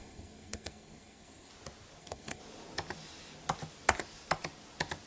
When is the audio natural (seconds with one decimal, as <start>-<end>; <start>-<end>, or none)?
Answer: 1.5-2.0; 2.4-5.1